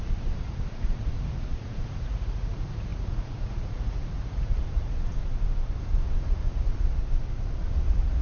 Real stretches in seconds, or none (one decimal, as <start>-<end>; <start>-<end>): 5.2-5.8; 7.0-7.6